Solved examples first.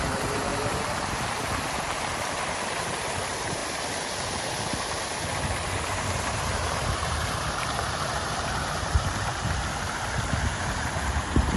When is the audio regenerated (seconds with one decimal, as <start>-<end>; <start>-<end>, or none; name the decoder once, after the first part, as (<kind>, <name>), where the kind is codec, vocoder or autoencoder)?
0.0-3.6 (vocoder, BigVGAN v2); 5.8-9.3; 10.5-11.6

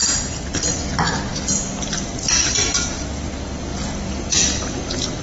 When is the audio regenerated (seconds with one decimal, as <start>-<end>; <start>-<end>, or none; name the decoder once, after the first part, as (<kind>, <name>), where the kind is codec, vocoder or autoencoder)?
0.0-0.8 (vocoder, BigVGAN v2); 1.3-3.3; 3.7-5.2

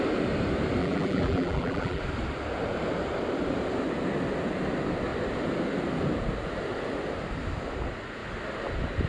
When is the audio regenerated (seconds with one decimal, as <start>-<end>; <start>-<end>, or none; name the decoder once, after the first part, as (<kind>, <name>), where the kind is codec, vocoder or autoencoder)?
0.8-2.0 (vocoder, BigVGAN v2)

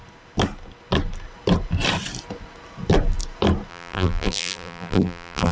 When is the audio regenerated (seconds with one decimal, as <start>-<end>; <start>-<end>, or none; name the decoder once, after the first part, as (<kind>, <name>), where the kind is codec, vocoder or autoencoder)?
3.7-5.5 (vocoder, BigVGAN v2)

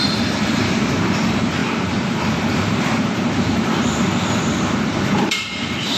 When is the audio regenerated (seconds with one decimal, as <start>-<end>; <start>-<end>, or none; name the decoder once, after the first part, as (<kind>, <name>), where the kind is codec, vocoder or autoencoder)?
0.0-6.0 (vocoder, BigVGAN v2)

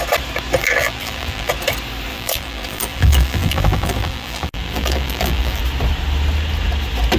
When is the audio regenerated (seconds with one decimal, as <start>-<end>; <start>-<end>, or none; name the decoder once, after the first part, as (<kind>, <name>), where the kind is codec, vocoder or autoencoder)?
0.6-1.5 (vocoder, BigVGAN v2); 2.1-5.6